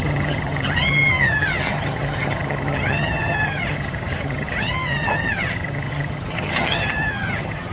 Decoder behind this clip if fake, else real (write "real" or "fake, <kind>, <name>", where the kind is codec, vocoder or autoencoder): fake, vocoder, HiFi-GAN